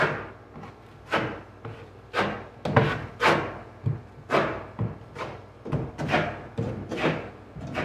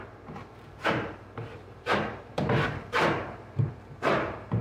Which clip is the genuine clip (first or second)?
first